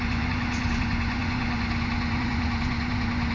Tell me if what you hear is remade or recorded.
remade